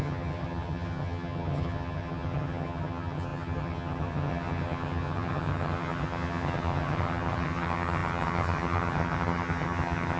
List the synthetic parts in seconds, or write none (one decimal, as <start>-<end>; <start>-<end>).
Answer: 0.0-10.2